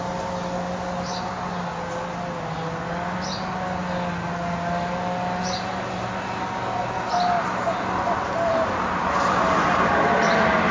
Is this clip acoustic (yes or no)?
yes